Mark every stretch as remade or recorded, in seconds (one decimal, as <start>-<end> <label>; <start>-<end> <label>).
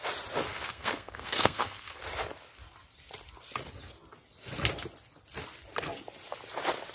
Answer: 0.0-0.5 recorded; 0.5-2.0 remade; 2.0-6.9 recorded